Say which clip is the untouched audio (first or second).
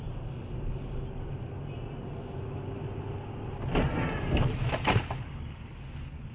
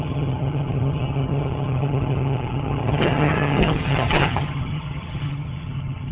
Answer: first